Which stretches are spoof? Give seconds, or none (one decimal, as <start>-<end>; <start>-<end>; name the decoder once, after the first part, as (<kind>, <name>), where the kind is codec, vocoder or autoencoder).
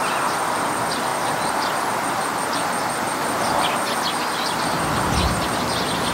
1.1-1.9 (vocoder, BigVGAN v2)